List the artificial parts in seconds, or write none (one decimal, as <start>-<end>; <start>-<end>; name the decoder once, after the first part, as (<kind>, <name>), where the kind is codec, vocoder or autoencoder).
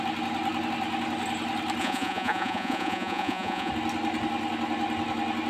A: 1.8-3.7 (vocoder, Vocos)